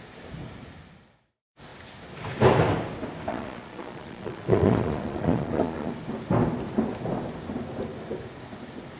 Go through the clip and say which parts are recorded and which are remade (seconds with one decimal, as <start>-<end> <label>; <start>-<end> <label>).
0.0-3.3 recorded; 3.3-5.9 remade; 5.9-9.0 recorded